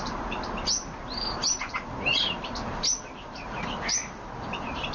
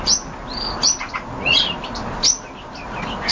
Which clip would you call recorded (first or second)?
second